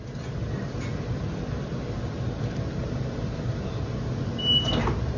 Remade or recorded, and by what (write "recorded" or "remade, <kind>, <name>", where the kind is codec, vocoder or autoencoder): recorded